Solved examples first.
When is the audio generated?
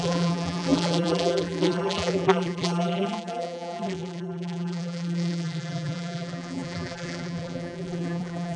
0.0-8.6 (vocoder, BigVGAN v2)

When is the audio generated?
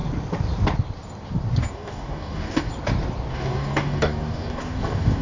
1.7-2.7 (codec, DAC); 3.3-5.2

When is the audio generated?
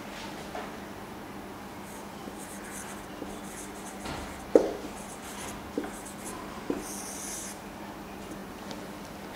2.2-3.1 (vocoder, BigVGAN v2)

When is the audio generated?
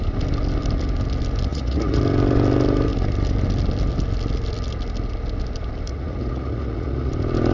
1.5-2.0 (vocoder, Vocos); 5.9-7.1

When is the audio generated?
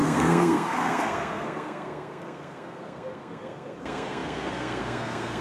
0.0-5.4 (codec, SNAC)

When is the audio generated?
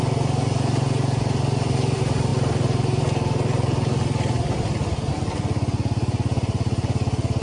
none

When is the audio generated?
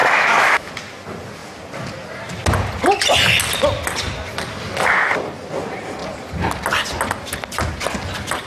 0.0-0.7 (autoencoder, DAC-VAE)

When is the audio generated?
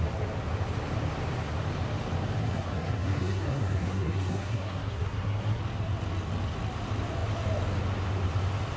2.4-5.6 (codec, SNAC)